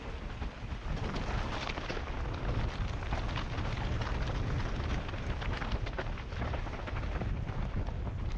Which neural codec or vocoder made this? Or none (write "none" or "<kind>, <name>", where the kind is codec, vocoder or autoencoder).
none